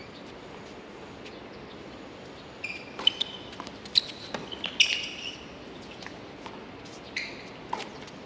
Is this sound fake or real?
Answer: real